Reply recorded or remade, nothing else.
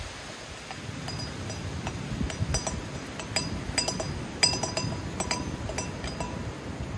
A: recorded